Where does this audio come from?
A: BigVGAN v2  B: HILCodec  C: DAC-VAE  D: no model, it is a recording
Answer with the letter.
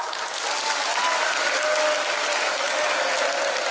D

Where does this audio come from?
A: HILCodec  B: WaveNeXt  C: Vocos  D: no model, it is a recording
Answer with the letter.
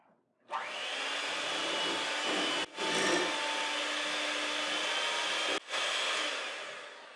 D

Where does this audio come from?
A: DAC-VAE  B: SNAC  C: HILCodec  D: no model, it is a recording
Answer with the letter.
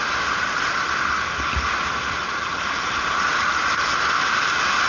D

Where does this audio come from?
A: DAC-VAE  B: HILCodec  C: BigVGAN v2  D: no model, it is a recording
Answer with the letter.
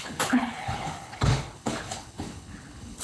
B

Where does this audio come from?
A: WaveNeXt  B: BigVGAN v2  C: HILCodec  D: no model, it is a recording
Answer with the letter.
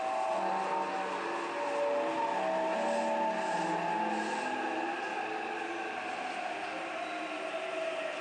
D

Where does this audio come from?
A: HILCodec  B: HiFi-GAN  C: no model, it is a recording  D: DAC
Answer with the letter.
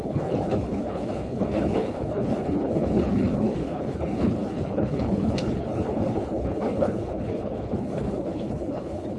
A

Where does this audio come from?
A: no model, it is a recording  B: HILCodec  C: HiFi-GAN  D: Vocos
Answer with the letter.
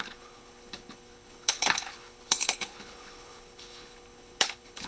B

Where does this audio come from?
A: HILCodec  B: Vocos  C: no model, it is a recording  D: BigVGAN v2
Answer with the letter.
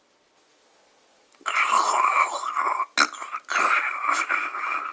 C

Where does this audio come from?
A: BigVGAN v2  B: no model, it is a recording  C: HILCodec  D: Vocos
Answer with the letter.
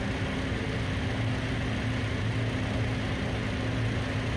B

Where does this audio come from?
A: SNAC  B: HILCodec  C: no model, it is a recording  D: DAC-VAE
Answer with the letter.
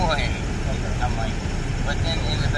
C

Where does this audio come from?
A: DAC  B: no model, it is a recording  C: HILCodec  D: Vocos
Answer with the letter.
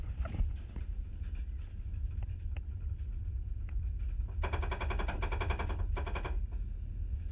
B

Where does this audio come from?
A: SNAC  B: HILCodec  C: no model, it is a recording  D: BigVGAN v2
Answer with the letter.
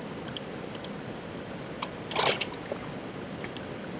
C